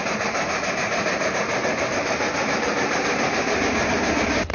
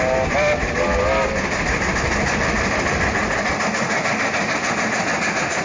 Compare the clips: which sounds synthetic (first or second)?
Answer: first